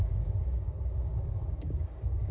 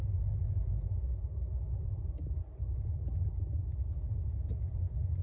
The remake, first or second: first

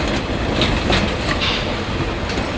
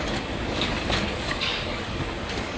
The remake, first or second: second